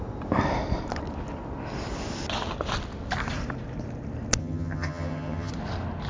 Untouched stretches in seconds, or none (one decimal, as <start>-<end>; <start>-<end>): 0.0-4.4; 5.5-6.1

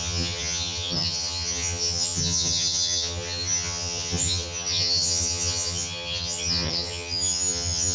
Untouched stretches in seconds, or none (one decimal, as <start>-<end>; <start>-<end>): none

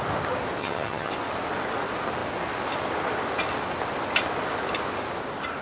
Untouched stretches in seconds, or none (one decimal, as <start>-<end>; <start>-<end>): 0.0-0.6; 1.1-5.6

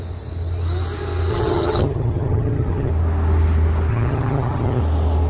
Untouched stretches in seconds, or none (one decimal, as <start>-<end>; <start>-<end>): 0.0-1.3; 2.9-3.9; 4.8-5.3

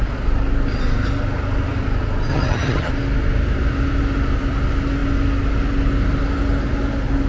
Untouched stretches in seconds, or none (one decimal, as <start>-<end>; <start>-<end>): 0.0-2.3; 2.9-7.3